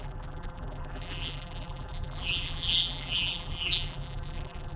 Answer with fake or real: fake